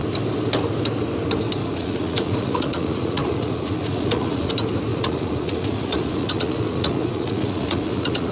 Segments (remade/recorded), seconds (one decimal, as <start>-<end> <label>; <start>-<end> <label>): 0.0-1.6 recorded; 1.6-4.5 remade; 4.5-4.9 recorded; 4.9-8.3 remade